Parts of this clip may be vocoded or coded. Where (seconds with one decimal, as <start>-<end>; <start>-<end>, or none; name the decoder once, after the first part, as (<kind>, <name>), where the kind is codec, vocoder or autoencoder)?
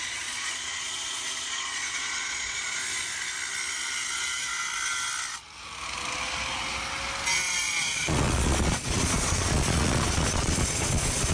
0.0-2.8 (vocoder, Vocos); 7.8-11.3